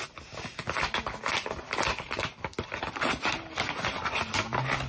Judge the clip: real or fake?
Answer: real